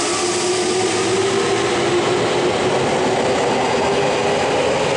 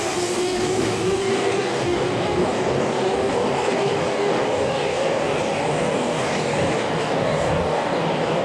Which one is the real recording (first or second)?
first